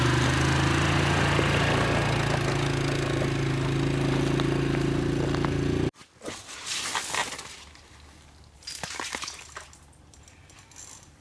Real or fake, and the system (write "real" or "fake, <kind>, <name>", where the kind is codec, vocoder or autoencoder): real